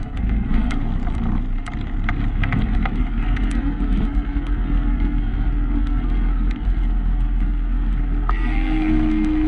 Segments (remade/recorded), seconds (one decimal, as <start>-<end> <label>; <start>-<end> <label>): 0.0-0.9 remade; 0.9-2.3 recorded; 2.3-9.5 remade

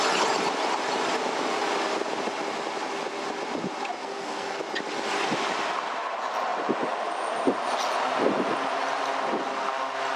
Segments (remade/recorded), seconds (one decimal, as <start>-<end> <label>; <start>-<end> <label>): 0.0-4.0 recorded; 4.0-4.6 remade; 4.6-10.2 recorded